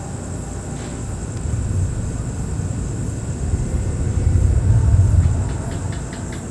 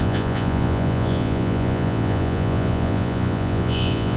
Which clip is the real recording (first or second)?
first